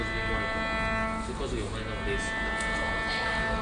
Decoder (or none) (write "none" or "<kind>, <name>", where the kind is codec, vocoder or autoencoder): none